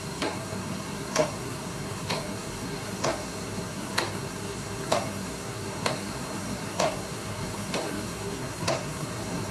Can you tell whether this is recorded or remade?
remade